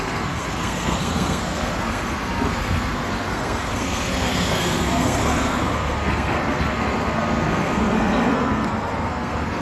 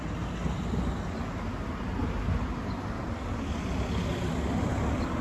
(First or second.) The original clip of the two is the second